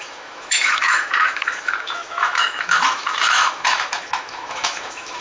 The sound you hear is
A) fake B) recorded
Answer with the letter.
A